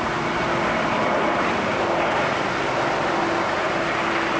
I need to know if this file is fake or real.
real